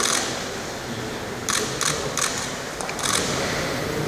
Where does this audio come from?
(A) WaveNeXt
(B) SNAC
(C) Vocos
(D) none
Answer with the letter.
D